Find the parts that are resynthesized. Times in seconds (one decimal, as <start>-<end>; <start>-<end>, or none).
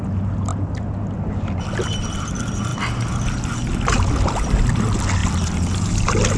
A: none